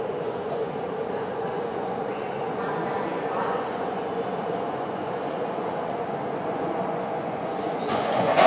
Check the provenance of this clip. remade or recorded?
remade